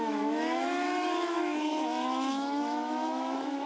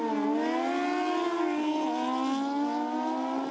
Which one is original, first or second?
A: second